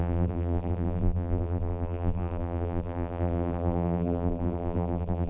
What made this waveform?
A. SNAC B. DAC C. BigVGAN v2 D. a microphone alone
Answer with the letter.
C